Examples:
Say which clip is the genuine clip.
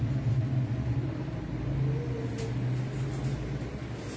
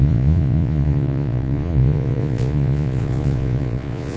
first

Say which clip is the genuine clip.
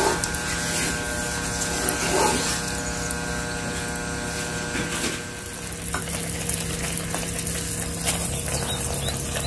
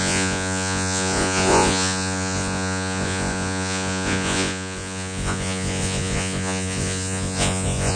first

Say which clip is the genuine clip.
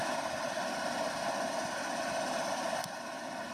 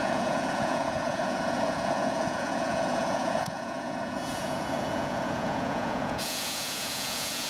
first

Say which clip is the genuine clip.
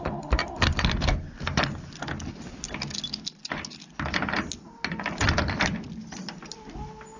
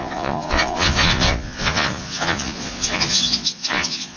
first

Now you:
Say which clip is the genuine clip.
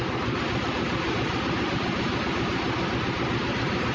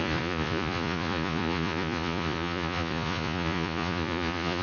first